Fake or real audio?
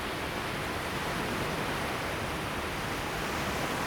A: real